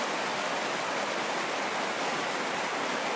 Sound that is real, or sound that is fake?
real